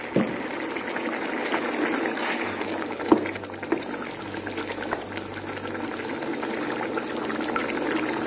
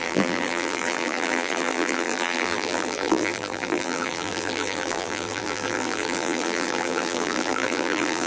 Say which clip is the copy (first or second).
second